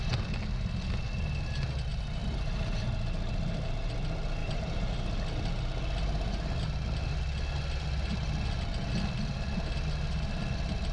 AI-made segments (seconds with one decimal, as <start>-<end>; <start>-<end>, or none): 2.2-2.8; 4.4-4.9